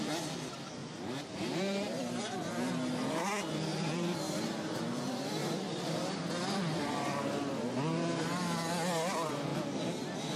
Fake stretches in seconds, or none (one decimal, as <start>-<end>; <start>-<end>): 0.8-2.2; 3.7-4.8; 5.4-6.3